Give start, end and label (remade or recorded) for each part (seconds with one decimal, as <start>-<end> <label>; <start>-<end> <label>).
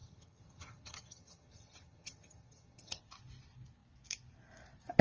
0.0-3.0 remade; 3.0-5.0 recorded